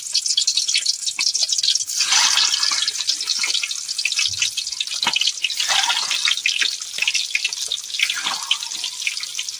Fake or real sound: real